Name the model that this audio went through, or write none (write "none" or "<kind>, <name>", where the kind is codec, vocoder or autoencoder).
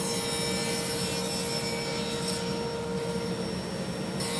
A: none